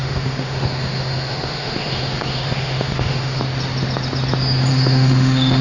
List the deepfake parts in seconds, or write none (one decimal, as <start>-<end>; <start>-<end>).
0.0-3.4; 4.7-5.6